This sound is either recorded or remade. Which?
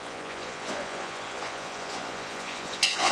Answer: remade